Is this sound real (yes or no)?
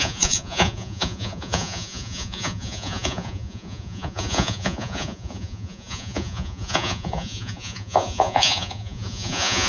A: no